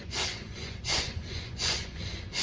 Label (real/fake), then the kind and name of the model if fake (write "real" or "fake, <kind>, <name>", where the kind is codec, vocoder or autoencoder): fake, vocoder, Vocos